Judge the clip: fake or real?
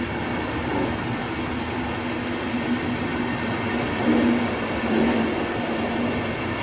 real